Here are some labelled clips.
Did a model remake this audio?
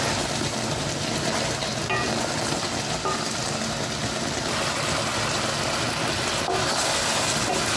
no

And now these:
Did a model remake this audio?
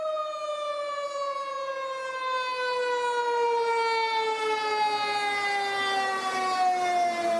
no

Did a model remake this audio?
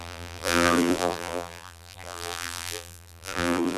yes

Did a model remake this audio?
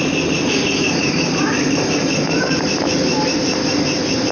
yes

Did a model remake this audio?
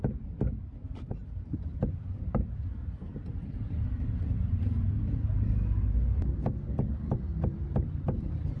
no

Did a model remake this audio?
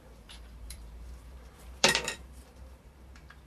yes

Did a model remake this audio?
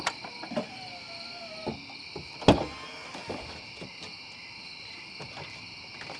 no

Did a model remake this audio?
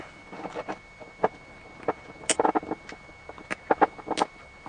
no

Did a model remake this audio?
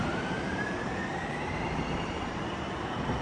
yes